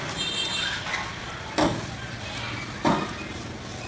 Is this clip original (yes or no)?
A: yes